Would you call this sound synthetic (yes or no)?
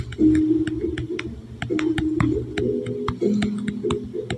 no